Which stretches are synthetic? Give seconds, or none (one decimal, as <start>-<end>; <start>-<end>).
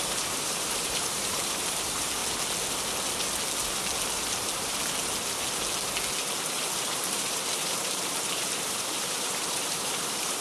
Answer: 0.0-2.2; 6.5-10.4